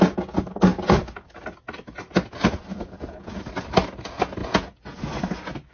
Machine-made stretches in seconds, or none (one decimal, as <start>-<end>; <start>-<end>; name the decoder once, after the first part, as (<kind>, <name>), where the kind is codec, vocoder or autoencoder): 2.7-3.4 (vocoder, Vocos); 4.4-5.0